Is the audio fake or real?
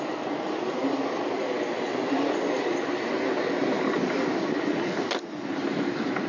real